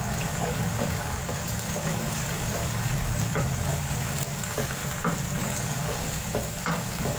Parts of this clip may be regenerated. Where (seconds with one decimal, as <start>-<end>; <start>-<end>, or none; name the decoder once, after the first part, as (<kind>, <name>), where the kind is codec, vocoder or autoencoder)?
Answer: 0.0-4.8 (codec, DAC); 5.4-7.2